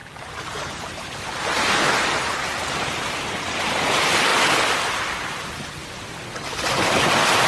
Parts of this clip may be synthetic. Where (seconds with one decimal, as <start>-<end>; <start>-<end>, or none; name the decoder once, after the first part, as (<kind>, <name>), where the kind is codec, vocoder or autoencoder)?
0.0-3.6 (vocoder, BigVGAN v2)